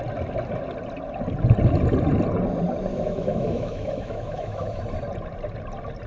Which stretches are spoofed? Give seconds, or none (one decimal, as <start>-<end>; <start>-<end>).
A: 2.9-4.8